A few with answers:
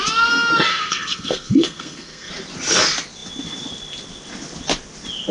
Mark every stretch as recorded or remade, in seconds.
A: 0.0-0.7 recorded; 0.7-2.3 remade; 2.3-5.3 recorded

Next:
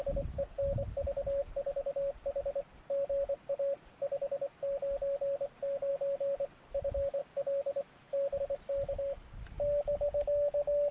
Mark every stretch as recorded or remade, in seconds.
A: 0.0-10.9 recorded

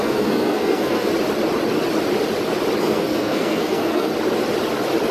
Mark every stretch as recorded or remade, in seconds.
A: 0.0-1.1 remade; 1.1-2.8 recorded; 2.8-4.1 remade; 4.1-5.1 recorded

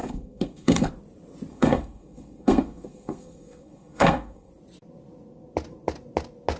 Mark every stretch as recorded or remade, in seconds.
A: 0.0-0.9 remade; 0.9-1.5 recorded; 1.5-4.5 remade; 4.5-6.6 recorded

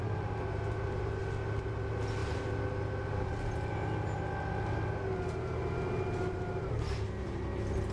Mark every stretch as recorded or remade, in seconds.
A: 0.0-7.9 recorded